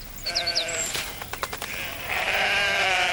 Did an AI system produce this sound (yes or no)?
yes